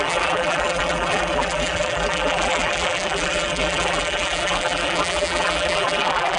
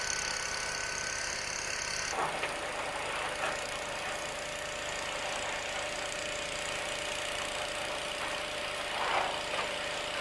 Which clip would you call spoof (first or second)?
first